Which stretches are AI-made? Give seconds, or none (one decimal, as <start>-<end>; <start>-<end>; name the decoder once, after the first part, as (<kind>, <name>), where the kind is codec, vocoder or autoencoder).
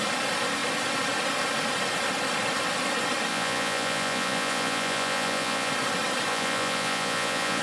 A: 3.3-5.7 (vocoder, Vocos); 6.3-7.6